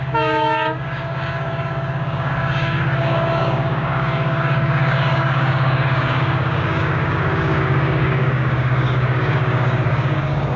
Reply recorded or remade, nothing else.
remade